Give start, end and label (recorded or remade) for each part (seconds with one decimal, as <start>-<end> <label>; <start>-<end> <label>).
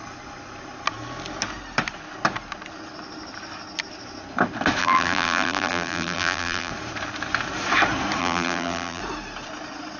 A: 0.0-4.8 recorded; 4.8-6.7 remade; 6.7-8.2 recorded; 8.2-9.0 remade; 9.0-10.0 recorded